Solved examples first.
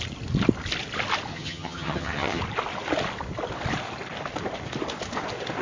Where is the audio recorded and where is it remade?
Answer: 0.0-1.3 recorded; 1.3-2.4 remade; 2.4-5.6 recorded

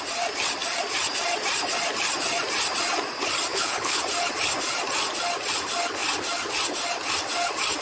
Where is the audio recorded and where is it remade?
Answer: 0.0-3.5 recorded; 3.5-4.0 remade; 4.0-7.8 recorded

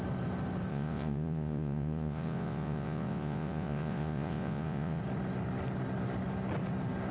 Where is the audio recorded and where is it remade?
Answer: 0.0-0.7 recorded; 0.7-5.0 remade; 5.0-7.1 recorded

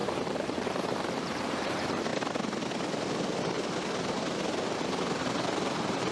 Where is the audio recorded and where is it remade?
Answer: 0.0-2.1 remade; 2.1-5.2 recorded; 5.2-6.1 remade

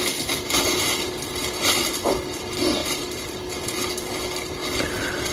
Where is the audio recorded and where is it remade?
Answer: 0.0-2.8 recorded; 2.8-3.4 remade; 3.4-5.3 recorded

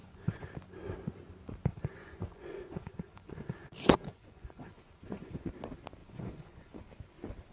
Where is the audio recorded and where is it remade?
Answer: 0.0-0.5 remade; 0.5-1.7 recorded; 1.7-5.5 remade; 5.5-6.0 recorded; 6.0-6.8 remade; 6.8-7.5 recorded

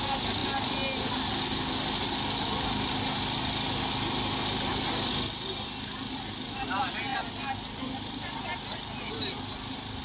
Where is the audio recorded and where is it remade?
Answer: 0.0-10.0 recorded